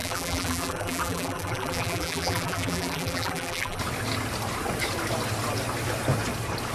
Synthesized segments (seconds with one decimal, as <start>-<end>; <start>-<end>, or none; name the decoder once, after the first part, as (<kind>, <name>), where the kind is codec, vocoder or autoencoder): 0.0-3.8 (vocoder, BigVGAN v2)